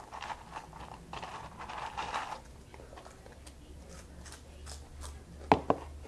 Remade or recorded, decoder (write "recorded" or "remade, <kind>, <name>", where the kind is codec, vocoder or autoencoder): recorded